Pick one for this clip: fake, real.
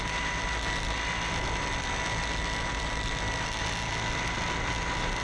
real